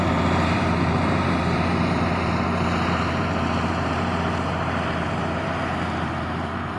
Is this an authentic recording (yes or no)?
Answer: no